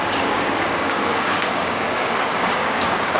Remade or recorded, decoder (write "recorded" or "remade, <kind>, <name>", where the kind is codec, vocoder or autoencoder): remade, codec, DAC